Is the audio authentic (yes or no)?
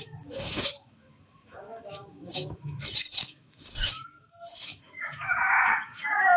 no